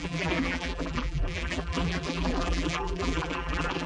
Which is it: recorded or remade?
remade